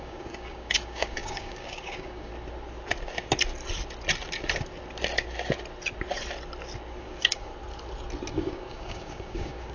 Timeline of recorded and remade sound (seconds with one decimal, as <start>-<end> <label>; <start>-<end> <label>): 0.0-2.3 remade; 2.3-7.0 recorded; 7.0-7.5 remade; 7.5-8.3 recorded; 8.3-9.7 remade